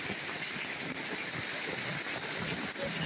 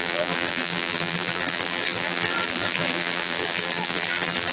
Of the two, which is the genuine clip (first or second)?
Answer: first